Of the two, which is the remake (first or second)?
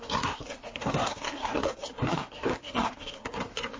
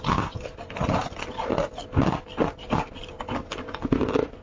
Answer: first